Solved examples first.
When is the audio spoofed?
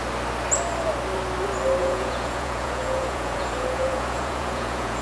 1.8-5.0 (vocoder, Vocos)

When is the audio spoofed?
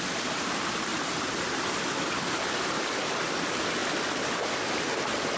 none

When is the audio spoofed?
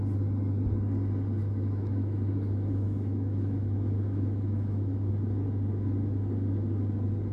1.4-5.1 (autoencoder, DAC-VAE)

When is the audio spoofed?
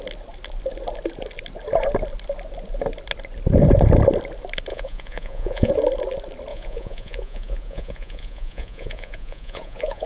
4.7-5.7 (vocoder, Vocos); 6.5-10.1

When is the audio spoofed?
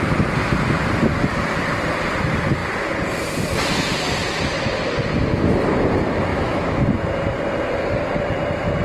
6.3-6.8 (autoencoder, DAC-VAE)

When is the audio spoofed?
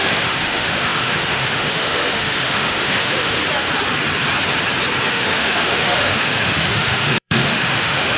0.0-3.4 (autoencoder, DAC-VAE); 5.1-8.2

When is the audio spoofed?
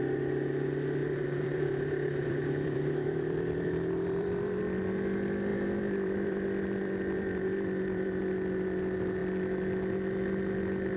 1.0-4.6 (vocoder, BigVGAN v2); 5.5-8.3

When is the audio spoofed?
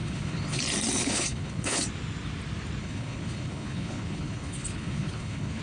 0.0-0.6 (codec, HILCodec); 1.0-1.8; 2.8-5.6